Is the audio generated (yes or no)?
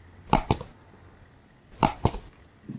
no